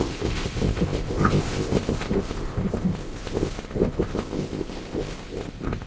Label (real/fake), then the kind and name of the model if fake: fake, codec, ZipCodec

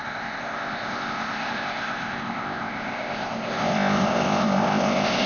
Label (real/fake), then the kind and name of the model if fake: fake, codec, ZipCodec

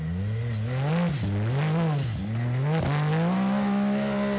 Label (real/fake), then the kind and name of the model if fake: real